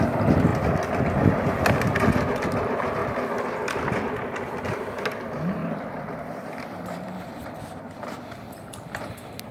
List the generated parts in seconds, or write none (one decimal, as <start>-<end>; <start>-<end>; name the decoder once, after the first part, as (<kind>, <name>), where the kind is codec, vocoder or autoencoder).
5.6-8.1 (vocoder, BigVGAN v2)